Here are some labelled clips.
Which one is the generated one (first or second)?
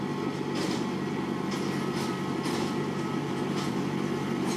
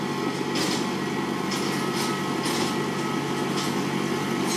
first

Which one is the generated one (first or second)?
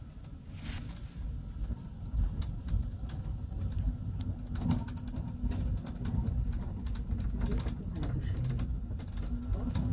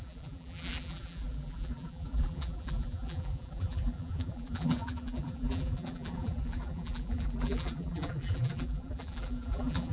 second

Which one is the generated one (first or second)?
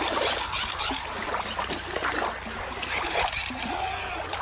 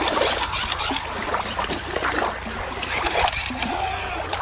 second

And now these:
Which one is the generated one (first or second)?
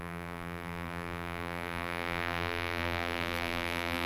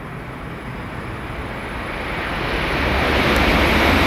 first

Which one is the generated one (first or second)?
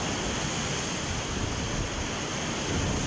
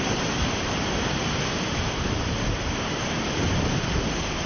second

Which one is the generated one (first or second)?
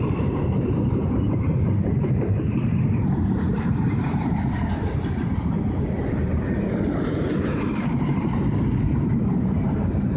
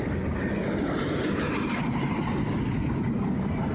first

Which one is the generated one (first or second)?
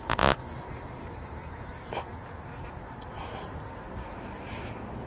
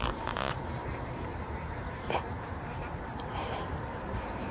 second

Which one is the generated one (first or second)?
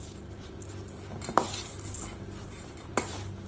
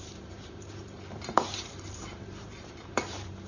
second